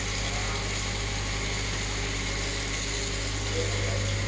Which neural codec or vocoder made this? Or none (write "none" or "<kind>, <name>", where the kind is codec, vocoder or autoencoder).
none